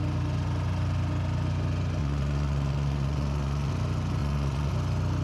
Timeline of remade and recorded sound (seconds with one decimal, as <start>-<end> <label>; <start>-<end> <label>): 0.0-2.0 recorded; 2.0-3.7 remade; 3.7-4.2 recorded; 4.2-4.7 remade; 4.7-5.2 recorded

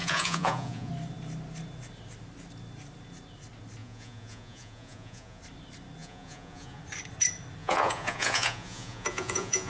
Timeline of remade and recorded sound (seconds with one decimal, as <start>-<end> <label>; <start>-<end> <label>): 0.0-0.9 remade; 0.9-3.8 recorded; 3.8-5.4 remade; 5.4-6.0 recorded; 6.0-6.8 remade; 6.8-7.6 recorded; 7.6-9.7 remade

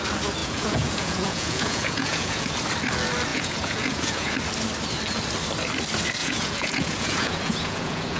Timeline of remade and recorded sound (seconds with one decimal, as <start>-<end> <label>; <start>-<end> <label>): 0.0-0.4 recorded; 0.4-2.5 remade; 2.5-3.3 recorded; 3.3-4.3 remade; 4.3-6.2 recorded; 6.2-8.2 remade

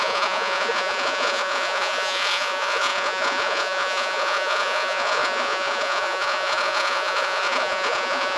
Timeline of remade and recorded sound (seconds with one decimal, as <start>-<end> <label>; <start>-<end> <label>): 0.0-8.4 remade